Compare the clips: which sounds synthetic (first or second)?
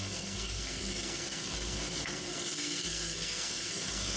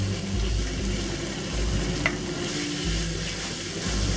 first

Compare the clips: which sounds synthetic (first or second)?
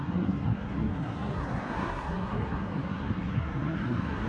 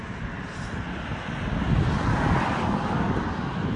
first